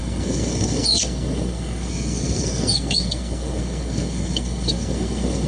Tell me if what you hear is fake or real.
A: fake